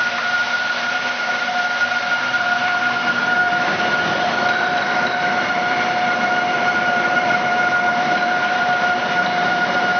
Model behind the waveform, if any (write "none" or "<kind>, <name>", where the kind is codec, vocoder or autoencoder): vocoder, BigVGAN v2